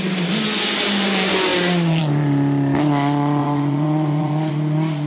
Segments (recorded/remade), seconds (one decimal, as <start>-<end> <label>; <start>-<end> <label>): 0.0-3.4 recorded; 3.4-4.5 remade; 4.5-5.1 recorded